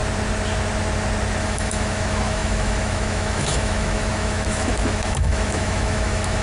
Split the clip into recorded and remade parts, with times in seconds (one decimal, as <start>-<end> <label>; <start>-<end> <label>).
0.0-1.4 recorded; 1.4-6.4 remade

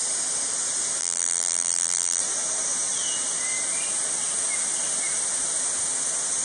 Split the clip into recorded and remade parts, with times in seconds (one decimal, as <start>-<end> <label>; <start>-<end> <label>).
0.0-1.0 recorded; 1.0-2.2 remade; 2.2-6.4 recorded

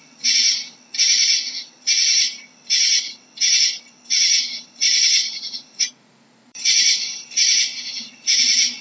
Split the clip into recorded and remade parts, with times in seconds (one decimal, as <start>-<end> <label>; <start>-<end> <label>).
0.0-4.3 recorded; 4.3-7.6 remade; 7.6-8.8 recorded

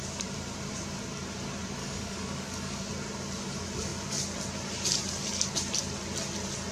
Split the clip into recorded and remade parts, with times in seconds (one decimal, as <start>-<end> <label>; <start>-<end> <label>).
0.0-1.8 recorded; 1.8-2.9 remade; 2.9-6.7 recorded